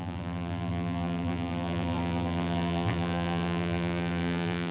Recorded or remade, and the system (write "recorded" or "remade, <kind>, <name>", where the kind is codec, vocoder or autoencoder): remade, vocoder, BigVGAN v2